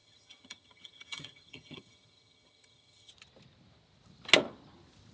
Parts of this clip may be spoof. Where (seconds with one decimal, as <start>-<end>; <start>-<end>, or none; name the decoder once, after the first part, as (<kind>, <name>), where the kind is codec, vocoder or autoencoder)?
0.0-3.1 (vocoder, HiFi-GAN)